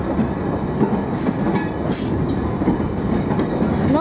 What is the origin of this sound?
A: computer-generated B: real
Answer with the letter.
B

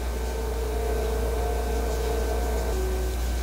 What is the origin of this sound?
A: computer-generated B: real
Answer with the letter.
B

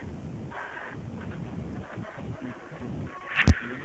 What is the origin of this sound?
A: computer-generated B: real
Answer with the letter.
B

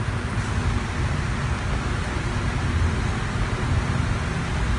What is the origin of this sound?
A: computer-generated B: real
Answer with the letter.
B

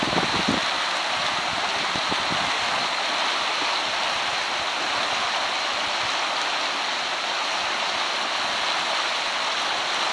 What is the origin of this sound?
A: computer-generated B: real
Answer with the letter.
B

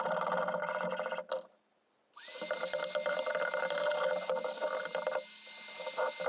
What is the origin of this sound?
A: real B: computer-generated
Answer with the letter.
A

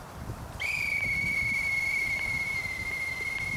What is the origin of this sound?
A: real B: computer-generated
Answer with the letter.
A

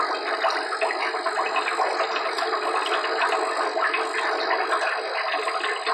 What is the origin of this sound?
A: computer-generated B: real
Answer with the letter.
B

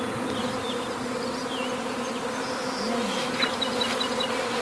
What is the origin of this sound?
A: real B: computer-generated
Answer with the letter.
A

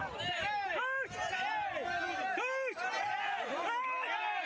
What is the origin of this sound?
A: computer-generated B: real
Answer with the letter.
B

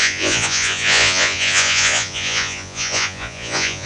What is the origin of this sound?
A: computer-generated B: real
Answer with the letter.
A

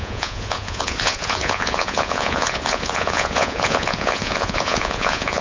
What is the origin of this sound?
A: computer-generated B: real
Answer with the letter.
A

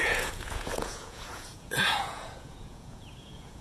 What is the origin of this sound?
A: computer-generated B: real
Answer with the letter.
A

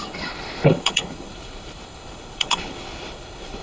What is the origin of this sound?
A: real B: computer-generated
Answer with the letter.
B